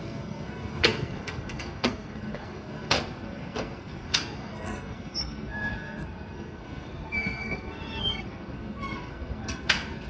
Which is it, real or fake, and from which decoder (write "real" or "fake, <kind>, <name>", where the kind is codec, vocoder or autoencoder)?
fake, codec, SNAC